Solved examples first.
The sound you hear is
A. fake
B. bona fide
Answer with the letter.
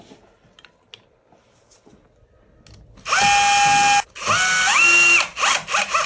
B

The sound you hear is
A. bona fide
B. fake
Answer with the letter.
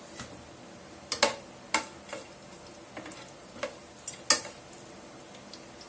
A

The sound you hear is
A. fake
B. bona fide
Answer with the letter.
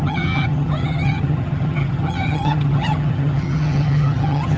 A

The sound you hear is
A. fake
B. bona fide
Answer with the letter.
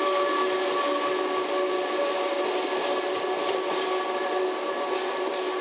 B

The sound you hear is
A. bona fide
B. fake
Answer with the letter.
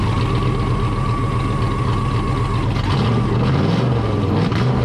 A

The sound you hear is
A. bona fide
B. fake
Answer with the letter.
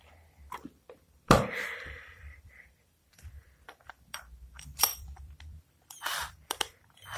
B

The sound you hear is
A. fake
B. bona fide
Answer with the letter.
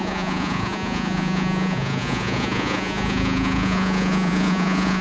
A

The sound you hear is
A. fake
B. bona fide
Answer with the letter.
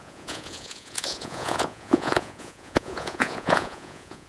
A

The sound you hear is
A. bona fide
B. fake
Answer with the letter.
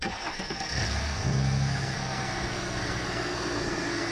B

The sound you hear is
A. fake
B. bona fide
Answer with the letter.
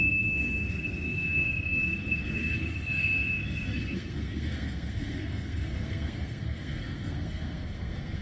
A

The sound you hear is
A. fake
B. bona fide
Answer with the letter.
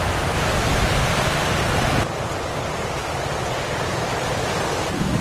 B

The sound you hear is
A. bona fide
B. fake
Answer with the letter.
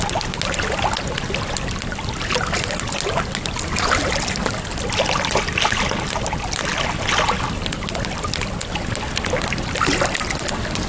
A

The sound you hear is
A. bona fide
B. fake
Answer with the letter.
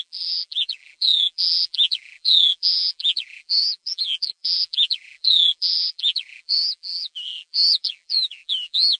B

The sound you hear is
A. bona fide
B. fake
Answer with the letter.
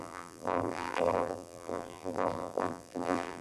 B